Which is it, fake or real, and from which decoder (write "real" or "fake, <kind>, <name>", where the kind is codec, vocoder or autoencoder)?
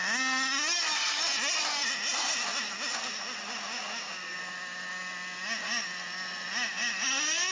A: real